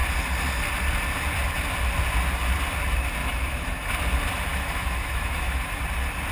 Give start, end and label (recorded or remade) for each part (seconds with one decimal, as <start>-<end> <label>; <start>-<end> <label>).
0.0-3.2 recorded; 3.2-4.0 remade; 4.0-4.5 recorded; 4.5-5.8 remade; 5.8-6.3 recorded